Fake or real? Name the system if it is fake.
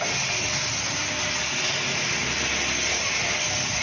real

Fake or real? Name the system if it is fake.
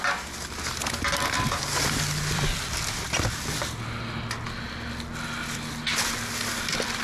real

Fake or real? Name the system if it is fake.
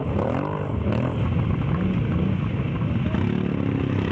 real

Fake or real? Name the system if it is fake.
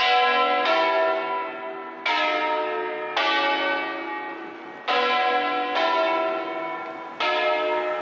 real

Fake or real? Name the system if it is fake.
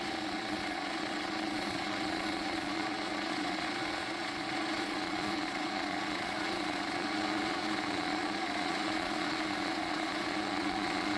fake, vocoder, Vocos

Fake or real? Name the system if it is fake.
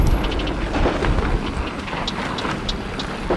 real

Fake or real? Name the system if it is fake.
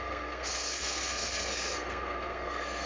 fake, codec, SNAC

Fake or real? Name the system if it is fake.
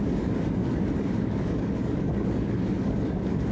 fake, codec, DAC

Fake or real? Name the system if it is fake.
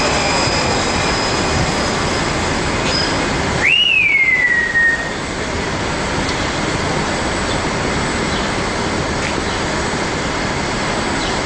real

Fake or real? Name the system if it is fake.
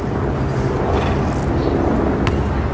real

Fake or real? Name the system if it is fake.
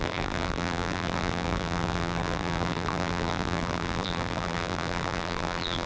fake, vocoder, BigVGAN v2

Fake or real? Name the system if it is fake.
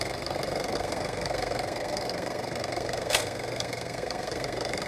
fake, codec, SNAC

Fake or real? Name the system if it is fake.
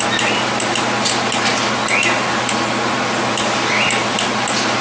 real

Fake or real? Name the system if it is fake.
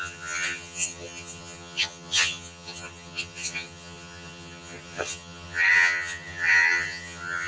fake, vocoder, HiFi-GAN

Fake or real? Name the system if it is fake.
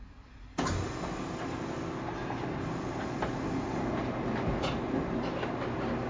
real